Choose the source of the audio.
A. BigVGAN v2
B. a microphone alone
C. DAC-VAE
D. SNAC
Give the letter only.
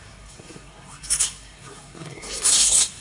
D